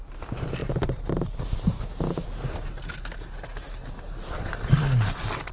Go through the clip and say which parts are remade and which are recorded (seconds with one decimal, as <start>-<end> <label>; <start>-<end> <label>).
0.0-5.5 recorded